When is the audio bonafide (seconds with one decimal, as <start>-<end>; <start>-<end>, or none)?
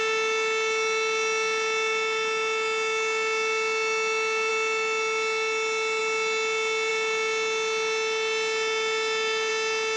0.0-10.0